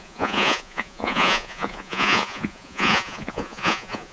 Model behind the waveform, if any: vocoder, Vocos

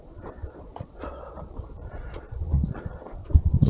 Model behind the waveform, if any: vocoder, Vocos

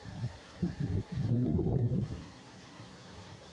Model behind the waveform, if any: codec, SNAC